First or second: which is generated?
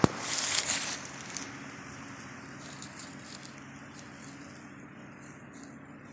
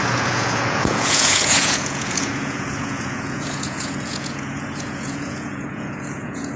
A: second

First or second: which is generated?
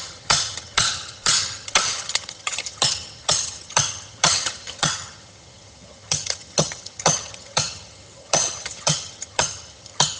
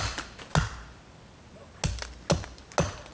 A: first